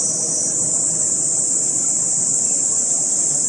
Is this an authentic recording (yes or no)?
yes